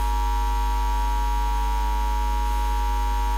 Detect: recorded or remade recorded